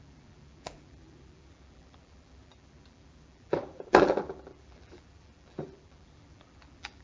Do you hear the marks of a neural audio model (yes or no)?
yes